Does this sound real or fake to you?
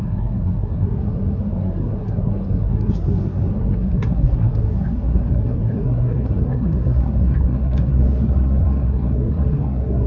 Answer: fake